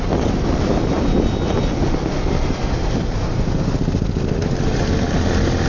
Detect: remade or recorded recorded